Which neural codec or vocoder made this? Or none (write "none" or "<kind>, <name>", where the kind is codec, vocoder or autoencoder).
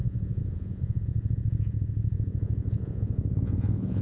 vocoder, Vocos